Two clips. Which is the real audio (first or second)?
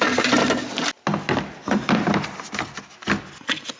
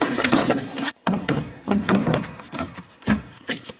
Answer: first